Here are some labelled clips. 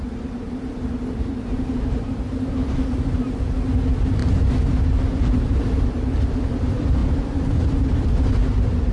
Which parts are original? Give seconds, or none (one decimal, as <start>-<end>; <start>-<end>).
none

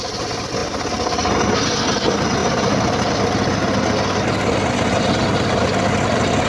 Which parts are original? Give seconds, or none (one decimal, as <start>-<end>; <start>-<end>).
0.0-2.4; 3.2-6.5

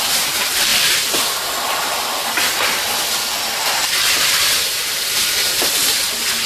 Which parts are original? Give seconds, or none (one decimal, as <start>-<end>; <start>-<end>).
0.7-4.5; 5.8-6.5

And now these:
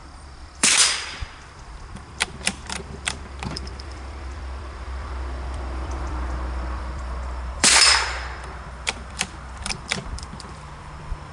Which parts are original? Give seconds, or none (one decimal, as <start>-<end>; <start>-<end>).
none

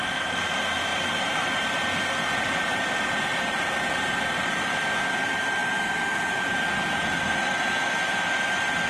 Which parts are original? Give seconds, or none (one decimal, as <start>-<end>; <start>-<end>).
0.0-0.9; 3.7-5.6; 7.3-8.9